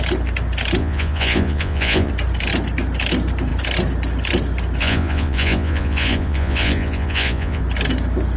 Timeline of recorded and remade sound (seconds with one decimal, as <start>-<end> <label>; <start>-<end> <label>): 0.0-0.8 recorded; 0.8-2.1 remade; 2.1-4.8 recorded; 4.8-7.6 remade; 7.6-8.4 recorded